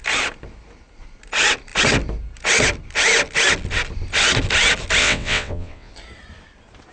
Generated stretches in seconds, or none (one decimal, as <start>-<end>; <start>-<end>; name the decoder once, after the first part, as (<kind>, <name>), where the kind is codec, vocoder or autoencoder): 5.0-5.9 (vocoder, WaveNeXt)